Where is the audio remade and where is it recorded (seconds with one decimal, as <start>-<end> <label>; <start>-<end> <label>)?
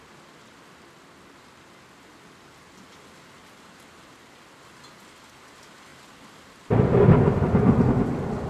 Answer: 0.0-8.5 recorded